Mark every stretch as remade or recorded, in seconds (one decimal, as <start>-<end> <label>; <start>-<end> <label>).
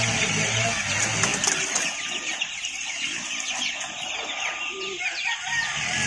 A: 0.0-1.3 recorded; 1.3-5.0 remade; 5.0-6.1 recorded